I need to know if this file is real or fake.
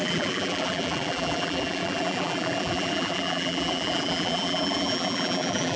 fake